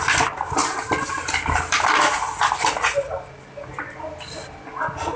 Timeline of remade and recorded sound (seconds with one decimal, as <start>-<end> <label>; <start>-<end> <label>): 0.0-5.2 recorded